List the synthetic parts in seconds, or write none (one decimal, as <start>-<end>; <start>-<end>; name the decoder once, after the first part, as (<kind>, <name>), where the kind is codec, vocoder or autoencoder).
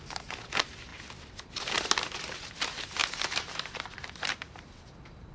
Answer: 3.0-5.3 (vocoder, BigVGAN v2)